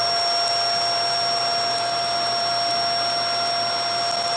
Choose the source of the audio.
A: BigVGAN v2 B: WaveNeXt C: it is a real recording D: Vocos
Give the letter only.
C